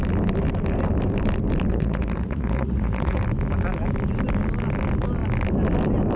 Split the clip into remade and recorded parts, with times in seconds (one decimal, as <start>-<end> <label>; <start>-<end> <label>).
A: 0.0-1.7 recorded; 1.7-3.2 remade; 3.2-6.2 recorded